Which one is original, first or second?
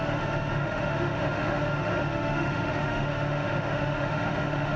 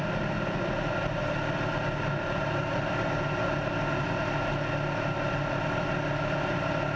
second